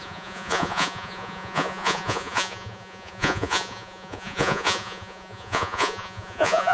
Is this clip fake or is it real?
fake